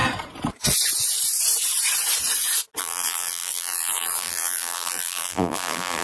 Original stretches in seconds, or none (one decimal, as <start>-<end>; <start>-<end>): 0.0-2.8